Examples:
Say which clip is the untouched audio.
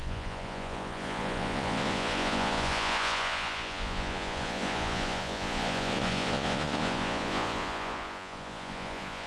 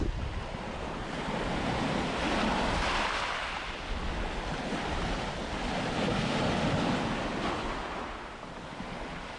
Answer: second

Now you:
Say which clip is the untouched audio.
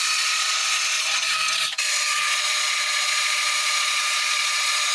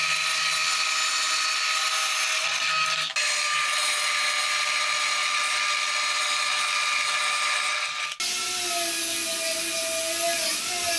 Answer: second